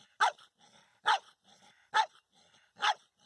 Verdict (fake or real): real